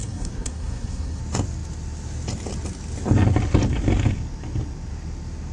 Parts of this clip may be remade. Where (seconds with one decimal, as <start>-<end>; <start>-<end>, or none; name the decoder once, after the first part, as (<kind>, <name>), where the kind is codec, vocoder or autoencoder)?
0.0-1.2 (codec, SNAC)